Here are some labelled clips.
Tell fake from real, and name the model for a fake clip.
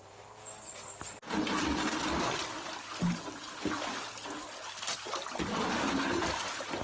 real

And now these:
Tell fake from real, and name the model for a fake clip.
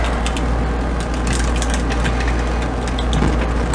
real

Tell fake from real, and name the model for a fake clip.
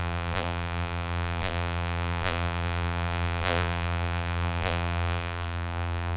fake, vocoder, BigVGAN v2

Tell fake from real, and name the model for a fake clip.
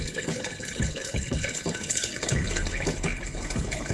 fake, codec, HILCodec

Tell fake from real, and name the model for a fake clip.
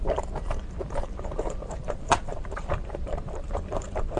fake, vocoder, BigVGAN v2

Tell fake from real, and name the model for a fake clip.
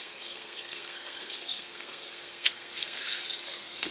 fake, codec, SNAC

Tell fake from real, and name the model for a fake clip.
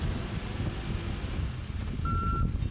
real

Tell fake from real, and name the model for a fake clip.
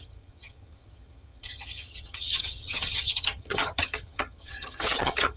fake, vocoder, HiFi-GAN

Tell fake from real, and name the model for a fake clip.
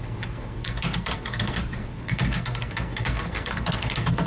fake, codec, SNAC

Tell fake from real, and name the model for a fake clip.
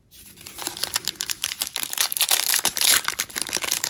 fake, vocoder, BigVGAN v2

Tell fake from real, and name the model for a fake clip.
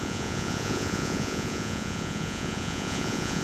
fake, vocoder, Vocos